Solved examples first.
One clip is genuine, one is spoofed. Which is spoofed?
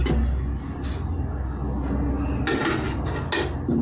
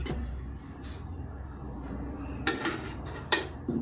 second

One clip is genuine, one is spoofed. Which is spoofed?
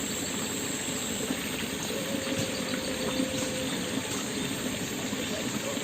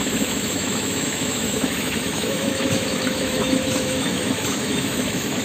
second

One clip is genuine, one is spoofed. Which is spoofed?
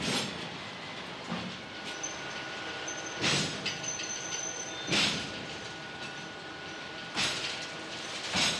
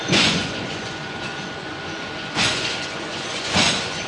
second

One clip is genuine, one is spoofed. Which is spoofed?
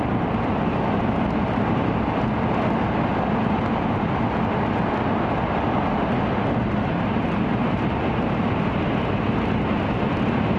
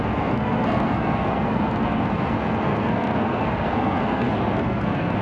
second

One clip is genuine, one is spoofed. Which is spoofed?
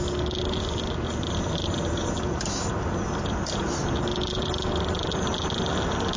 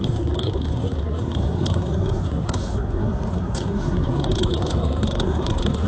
second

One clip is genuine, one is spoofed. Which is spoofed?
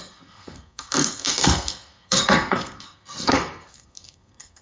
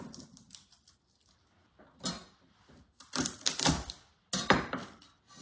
first